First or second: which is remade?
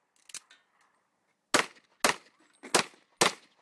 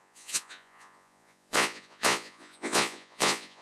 second